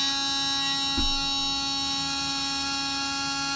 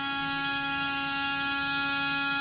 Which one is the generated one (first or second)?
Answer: second